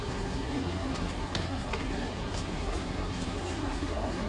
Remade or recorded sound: remade